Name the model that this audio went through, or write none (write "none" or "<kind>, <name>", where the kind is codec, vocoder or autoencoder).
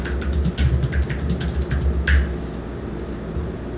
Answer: none